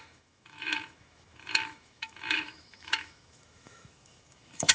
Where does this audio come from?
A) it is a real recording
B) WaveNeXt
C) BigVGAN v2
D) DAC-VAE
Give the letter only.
D